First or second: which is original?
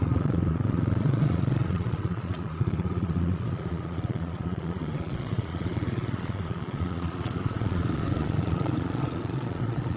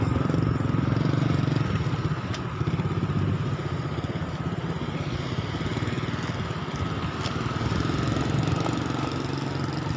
second